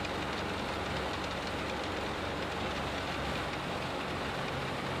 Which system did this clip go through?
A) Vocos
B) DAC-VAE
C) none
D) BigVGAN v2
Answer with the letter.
C